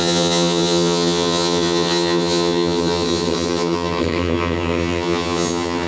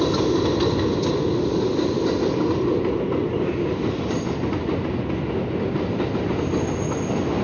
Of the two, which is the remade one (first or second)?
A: first